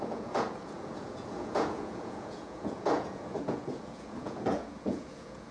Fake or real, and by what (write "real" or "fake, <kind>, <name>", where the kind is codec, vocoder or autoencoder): fake, vocoder, Vocos